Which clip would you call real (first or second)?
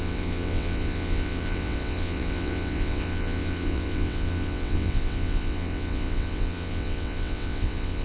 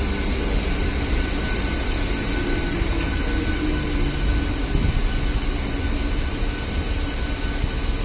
second